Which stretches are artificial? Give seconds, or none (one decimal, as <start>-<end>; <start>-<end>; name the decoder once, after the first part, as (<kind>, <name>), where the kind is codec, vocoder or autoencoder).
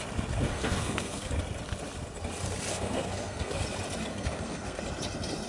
0.5-1.3 (codec, SNAC); 2.7-3.6; 4.1-4.8